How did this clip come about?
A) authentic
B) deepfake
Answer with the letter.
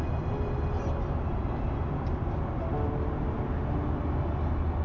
A